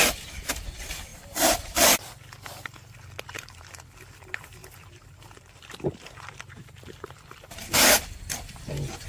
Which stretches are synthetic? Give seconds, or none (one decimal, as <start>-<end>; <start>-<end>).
0.0-9.1